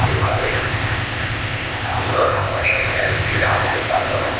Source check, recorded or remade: remade